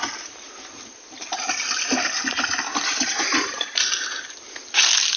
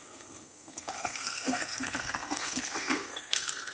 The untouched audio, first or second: first